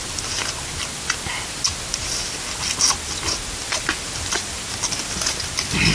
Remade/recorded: recorded